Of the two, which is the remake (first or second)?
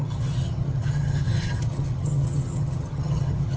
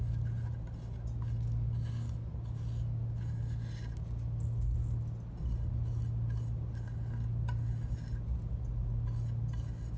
first